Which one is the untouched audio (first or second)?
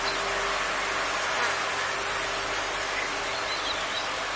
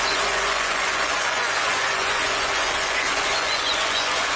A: first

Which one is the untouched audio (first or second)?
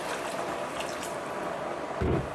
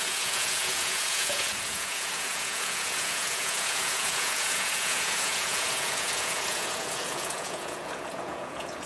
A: first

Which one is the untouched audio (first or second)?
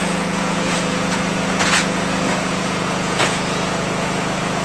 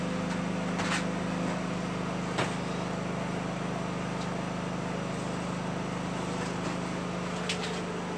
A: second